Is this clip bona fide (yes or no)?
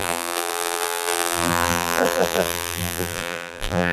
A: no